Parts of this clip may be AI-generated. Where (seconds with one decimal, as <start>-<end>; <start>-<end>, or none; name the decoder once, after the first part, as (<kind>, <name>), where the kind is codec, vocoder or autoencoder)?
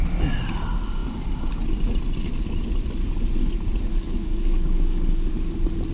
3.9-5.3 (codec, DAC)